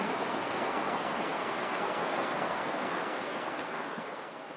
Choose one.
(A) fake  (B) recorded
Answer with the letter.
A